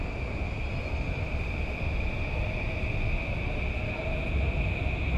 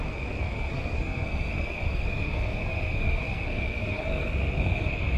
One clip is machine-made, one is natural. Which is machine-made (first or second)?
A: second